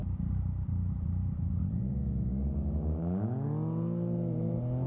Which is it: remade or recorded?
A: recorded